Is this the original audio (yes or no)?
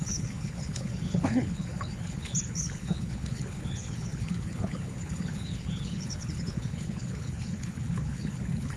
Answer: no